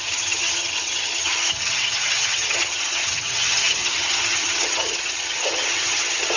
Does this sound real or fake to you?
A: fake